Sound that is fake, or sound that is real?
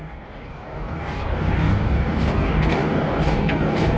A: fake